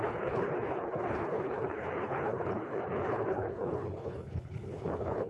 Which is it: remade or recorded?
remade